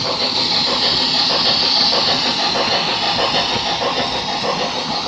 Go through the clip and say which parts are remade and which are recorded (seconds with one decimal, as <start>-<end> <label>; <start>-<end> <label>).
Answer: 0.0-5.1 recorded

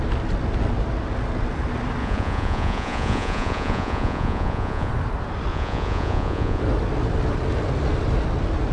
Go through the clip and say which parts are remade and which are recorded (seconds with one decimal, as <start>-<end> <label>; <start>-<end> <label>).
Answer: 0.0-2.0 recorded; 2.0-4.9 remade; 4.9-5.5 recorded; 5.5-6.6 remade; 6.6-8.7 recorded

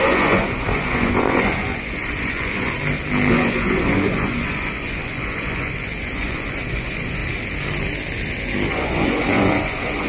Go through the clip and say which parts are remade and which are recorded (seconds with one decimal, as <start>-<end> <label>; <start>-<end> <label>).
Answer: 0.0-2.8 remade; 2.8-3.3 recorded; 3.3-7.2 remade; 7.2-8.7 recorded; 8.7-10.1 remade

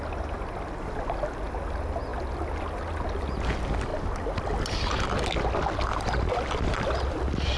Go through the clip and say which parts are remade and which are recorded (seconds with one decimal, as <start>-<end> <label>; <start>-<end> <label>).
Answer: 0.0-7.6 recorded

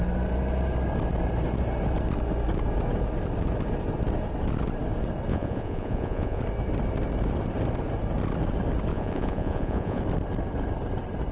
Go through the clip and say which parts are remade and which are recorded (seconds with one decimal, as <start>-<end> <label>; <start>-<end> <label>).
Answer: 0.0-5.3 recorded; 5.3-6.4 remade; 6.4-8.9 recorded; 8.9-10.0 remade; 10.0-11.3 recorded

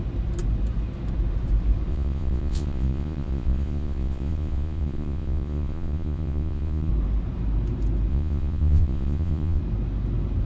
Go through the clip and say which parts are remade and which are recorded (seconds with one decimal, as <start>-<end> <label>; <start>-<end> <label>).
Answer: 0.0-1.9 recorded; 1.9-6.9 remade; 6.9-8.1 recorded; 8.1-9.6 remade; 9.6-10.4 recorded

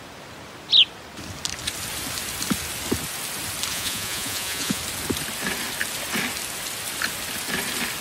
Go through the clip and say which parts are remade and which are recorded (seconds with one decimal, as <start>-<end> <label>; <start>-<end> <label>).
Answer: 0.0-3.7 recorded; 3.7-4.8 remade; 4.8-8.0 recorded